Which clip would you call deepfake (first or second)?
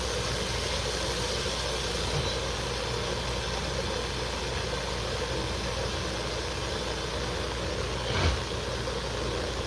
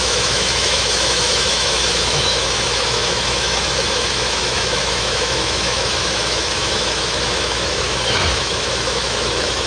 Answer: second